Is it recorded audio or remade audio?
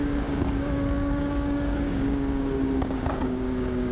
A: remade